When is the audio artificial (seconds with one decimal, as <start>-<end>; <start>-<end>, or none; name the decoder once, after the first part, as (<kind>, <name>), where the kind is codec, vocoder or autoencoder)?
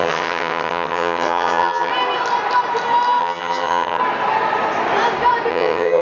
0.0-1.9 (vocoder, HiFi-GAN); 3.2-4.0; 5.5-6.0